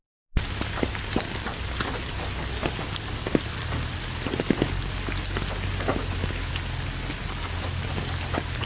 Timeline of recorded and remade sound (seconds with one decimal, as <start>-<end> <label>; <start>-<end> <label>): 0.0-5.9 recorded; 5.9-6.5 remade; 6.5-8.7 recorded